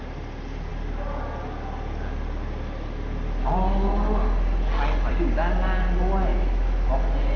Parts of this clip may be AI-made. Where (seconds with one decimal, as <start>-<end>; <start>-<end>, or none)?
6.3-6.9